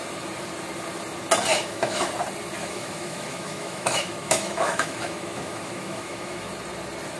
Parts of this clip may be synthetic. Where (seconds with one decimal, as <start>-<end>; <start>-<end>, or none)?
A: 1.5-2.1; 2.6-6.4